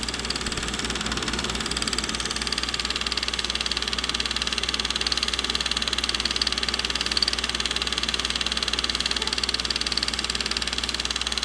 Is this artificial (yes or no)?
no